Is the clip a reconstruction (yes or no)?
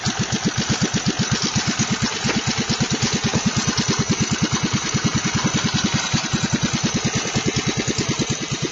no